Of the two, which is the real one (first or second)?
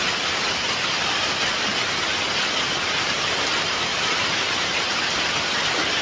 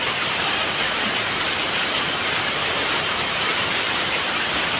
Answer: first